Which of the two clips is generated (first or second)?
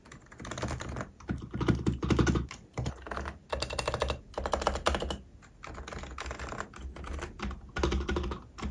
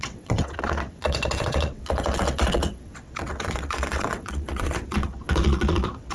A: second